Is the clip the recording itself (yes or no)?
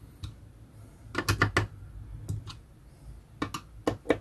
yes